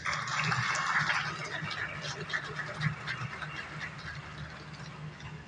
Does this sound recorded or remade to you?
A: recorded